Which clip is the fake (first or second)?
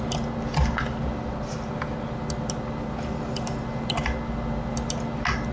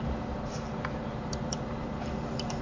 second